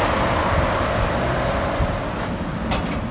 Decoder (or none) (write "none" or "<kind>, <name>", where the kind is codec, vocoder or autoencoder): none